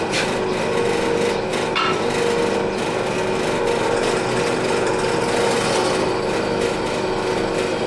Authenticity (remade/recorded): recorded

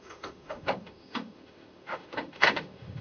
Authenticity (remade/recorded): remade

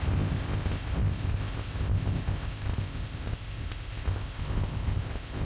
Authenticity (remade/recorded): remade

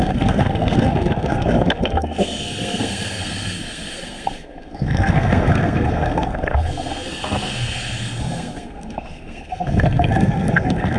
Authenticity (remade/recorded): remade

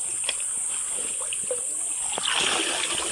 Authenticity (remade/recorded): recorded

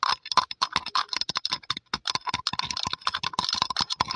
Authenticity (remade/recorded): recorded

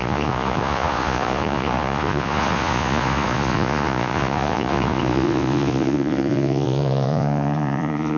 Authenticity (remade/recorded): remade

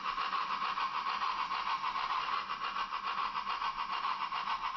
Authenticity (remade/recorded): recorded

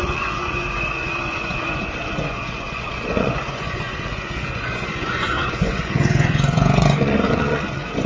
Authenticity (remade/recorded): remade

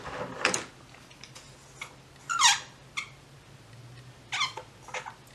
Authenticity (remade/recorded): recorded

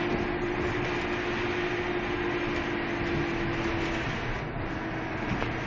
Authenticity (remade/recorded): recorded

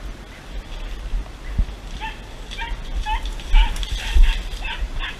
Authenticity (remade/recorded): recorded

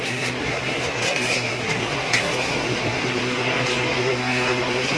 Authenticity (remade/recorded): remade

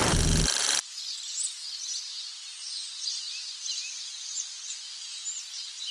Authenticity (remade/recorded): recorded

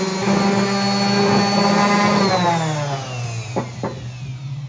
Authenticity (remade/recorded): recorded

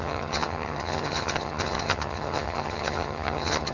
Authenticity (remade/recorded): remade